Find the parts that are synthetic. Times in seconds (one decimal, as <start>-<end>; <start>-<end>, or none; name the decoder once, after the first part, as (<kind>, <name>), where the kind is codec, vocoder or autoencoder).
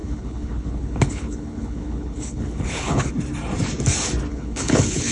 0.0-3.1 (codec, HILCodec); 4.3-5.1